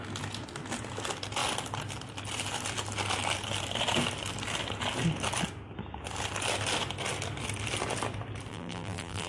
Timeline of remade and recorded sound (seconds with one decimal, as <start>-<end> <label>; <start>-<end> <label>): 0.0-8.5 recorded; 8.5-9.3 remade